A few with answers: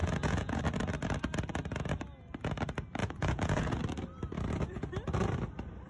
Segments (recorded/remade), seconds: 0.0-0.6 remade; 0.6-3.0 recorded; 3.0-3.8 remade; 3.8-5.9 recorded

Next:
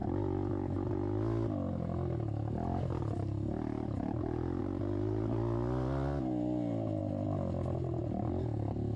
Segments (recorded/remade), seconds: 0.0-9.0 recorded